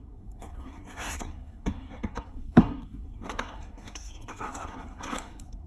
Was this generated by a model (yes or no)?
yes